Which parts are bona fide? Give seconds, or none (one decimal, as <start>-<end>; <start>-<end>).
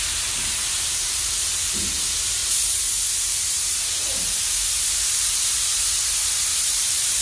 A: 2.4-3.2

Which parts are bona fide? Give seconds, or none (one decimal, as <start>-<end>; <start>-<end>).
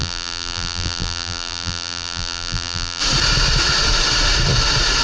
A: 3.0-5.0